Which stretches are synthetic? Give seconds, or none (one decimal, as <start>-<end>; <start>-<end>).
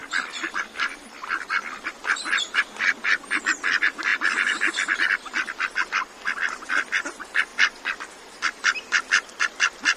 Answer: none